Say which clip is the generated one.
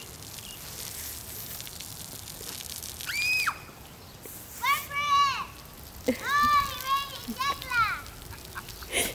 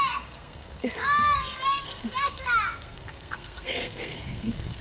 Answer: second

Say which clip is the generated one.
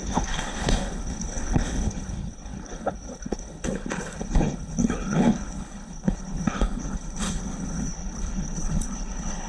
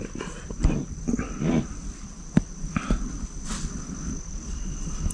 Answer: first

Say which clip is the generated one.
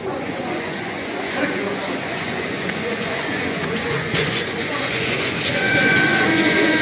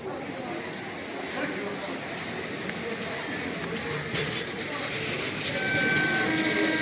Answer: first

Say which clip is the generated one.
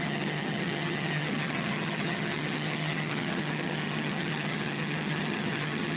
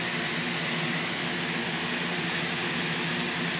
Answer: first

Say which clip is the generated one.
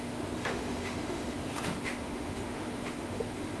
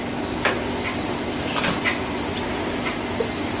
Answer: first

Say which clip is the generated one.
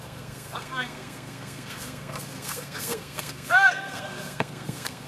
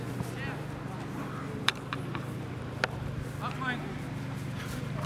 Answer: first